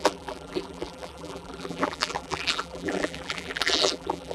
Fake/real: fake